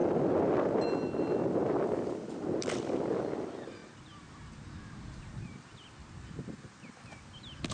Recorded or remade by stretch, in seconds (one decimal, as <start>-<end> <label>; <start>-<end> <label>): 0.0-3.8 recorded; 3.8-5.6 remade; 5.6-6.0 recorded; 6.0-6.6 remade; 6.6-7.7 recorded